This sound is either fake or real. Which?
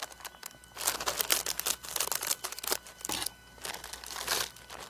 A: real